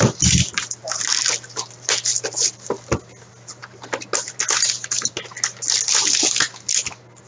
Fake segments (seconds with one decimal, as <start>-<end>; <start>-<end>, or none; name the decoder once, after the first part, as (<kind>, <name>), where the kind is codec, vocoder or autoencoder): none